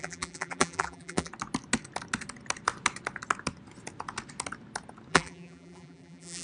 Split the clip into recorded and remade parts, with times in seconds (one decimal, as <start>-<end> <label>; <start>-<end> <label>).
0.0-1.3 remade; 1.3-5.1 recorded; 5.1-6.4 remade